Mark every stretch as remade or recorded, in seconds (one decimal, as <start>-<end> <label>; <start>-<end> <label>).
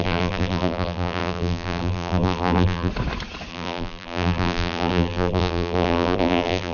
0.0-2.9 remade; 2.9-3.5 recorded; 3.5-6.7 remade